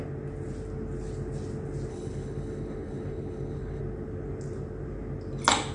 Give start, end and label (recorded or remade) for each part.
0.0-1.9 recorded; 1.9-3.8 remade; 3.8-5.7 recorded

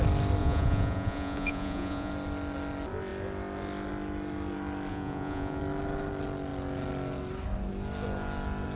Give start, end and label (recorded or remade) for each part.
0.0-0.4 recorded; 0.4-2.1 remade; 2.1-4.9 recorded; 4.9-5.6 remade; 5.6-8.8 recorded